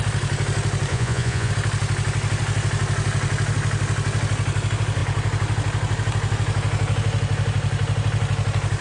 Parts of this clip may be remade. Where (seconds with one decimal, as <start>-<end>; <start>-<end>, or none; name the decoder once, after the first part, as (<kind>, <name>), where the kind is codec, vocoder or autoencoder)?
0.9-1.5 (vocoder, Vocos)